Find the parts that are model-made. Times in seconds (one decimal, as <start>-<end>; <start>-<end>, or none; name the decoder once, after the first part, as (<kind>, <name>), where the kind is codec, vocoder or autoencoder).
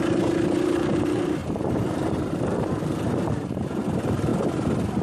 0.0-4.3 (vocoder, BigVGAN v2)